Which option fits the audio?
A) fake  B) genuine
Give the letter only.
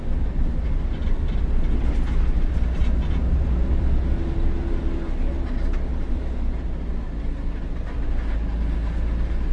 B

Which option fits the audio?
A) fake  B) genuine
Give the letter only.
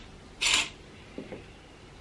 B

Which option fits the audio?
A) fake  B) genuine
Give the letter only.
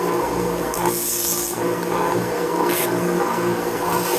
A